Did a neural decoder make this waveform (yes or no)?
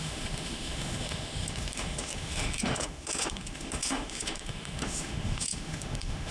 yes